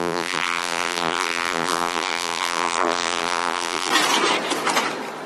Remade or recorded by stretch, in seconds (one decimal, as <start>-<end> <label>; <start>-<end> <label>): 0.0-3.9 remade; 3.9-5.3 recorded